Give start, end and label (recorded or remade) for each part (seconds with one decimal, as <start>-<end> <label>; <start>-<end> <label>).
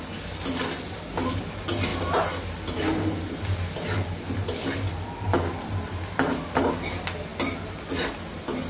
0.0-8.7 recorded